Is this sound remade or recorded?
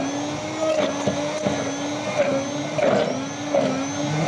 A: recorded